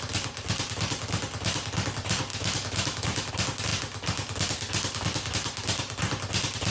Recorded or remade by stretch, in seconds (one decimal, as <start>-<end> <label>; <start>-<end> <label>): 0.0-2.3 recorded; 2.3-3.3 remade; 3.3-6.7 recorded